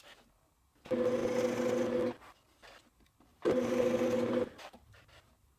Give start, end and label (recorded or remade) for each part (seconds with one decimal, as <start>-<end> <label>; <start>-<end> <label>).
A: 0.0-3.3 recorded; 3.3-5.6 remade